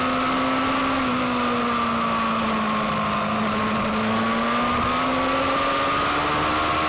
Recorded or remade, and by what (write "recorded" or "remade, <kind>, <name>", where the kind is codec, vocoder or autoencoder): recorded